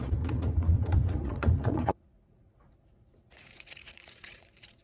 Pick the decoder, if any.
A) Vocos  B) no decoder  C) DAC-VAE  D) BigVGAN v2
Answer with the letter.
A